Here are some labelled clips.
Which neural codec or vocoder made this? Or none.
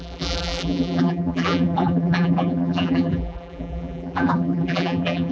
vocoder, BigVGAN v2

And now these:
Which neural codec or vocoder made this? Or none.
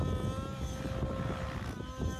none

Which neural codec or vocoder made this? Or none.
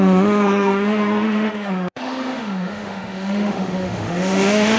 autoencoder, DAC-VAE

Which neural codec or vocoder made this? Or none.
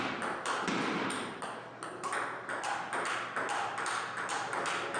none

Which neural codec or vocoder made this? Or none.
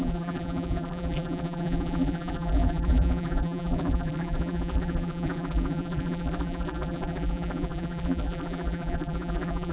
vocoder, BigVGAN v2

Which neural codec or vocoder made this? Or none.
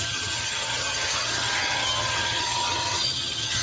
vocoder, HiFi-GAN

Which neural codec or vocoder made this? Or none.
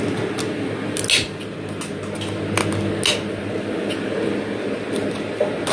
none